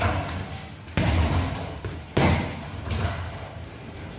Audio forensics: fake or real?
real